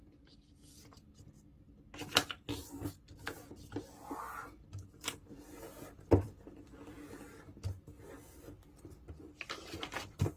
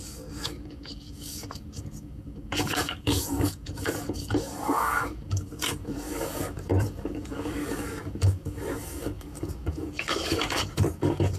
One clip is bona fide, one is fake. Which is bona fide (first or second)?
first